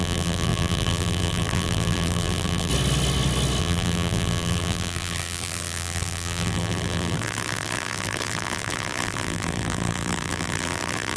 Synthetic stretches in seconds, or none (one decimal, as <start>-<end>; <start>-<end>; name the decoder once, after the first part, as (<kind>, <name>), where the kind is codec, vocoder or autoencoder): 0.0-2.7 (vocoder, BigVGAN v2); 3.6-11.2

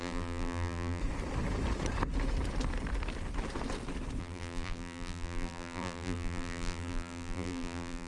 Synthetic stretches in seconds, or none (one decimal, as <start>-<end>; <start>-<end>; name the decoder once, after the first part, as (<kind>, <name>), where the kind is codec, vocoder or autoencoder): 0.0-1.0 (vocoder, BigVGAN v2); 4.2-8.1

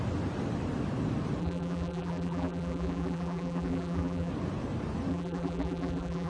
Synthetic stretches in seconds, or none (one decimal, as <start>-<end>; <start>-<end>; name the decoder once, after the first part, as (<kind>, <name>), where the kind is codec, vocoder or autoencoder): 1.4-4.3 (vocoder, BigVGAN v2); 5.1-6.3

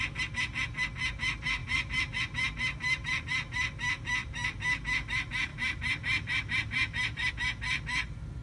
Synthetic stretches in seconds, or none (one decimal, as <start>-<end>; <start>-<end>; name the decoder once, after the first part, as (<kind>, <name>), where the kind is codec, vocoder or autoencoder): 1.6-2.2 (vocoder, BigVGAN v2); 4.2-4.8; 5.5-7.3

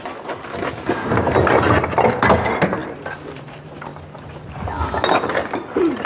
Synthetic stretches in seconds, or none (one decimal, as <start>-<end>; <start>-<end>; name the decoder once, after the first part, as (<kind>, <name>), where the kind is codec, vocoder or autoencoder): 2.8-3.3 (vocoder, BigVGAN v2); 3.9-5.5

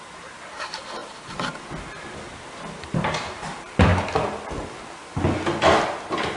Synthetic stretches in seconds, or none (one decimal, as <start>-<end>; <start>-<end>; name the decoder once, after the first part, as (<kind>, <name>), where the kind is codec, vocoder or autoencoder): 0.0-1.0 (vocoder, BigVGAN v2); 2.8-3.9

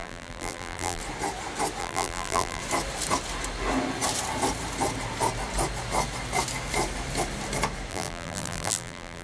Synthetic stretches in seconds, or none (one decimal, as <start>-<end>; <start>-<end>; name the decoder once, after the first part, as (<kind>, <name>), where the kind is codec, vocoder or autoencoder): 0.0-1.0 (vocoder, BigVGAN v2); 1.8-2.6; 7.9-9.2